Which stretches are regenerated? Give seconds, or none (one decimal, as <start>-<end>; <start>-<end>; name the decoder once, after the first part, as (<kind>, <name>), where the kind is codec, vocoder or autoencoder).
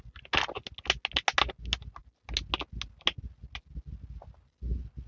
none